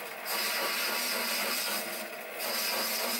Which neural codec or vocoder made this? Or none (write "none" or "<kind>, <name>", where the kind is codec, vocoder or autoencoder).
none